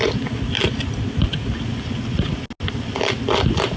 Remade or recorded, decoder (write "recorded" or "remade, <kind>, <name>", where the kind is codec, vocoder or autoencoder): recorded